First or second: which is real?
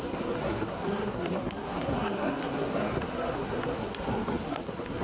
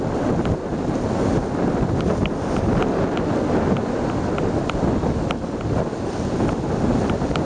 second